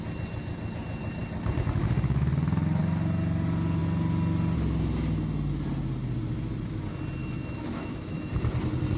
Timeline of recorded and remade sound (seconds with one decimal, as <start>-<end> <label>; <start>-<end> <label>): 0.0-7.2 recorded; 7.2-8.3 remade; 8.3-9.0 recorded